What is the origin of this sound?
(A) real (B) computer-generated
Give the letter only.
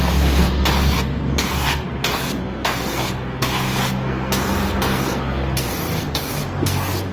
B